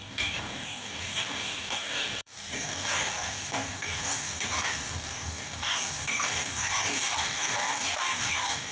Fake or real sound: fake